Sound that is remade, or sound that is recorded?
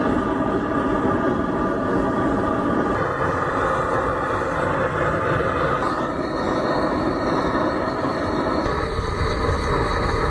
recorded